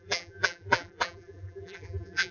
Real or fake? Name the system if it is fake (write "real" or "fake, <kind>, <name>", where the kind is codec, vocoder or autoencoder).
fake, vocoder, BigVGAN v2